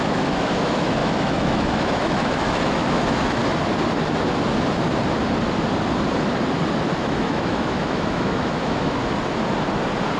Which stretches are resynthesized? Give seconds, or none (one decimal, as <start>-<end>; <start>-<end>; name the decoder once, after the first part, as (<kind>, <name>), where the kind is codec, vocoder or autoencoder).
0.0-3.4 (autoencoder, DAC-VAE); 7.0-9.0